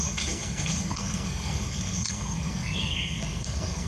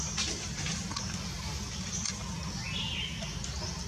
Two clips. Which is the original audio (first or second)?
second